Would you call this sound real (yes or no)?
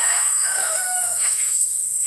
no